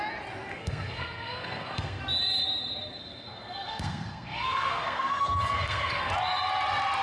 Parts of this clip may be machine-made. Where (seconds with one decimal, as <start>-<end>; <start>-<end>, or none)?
0.5-2.0; 3.0-6.1